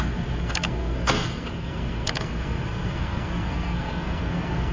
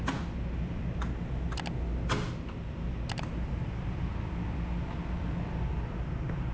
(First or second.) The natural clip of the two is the second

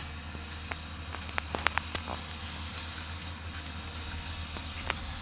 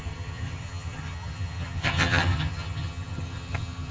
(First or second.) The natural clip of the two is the first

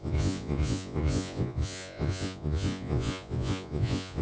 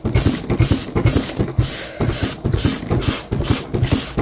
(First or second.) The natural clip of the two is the second